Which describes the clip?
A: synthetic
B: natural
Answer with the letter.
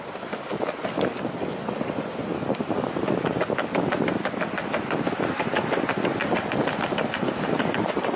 A